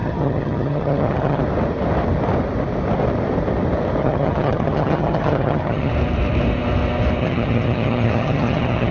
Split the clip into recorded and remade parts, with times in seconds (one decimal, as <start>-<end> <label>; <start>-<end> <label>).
0.0-1.4 remade; 1.4-4.0 recorded; 4.0-5.9 remade; 5.9-7.2 recorded; 7.2-8.9 remade